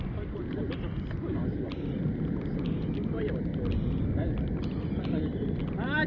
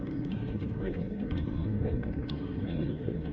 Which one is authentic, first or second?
first